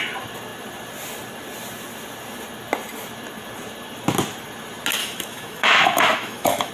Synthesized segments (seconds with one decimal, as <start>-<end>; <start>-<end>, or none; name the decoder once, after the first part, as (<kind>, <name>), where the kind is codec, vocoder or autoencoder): 5.0-6.7 (autoencoder, DAC-VAE)